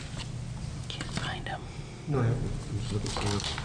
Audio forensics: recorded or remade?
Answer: recorded